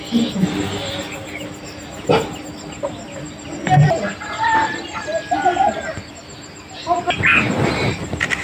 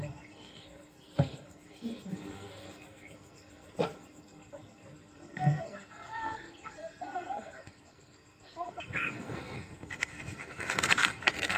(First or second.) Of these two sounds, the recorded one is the first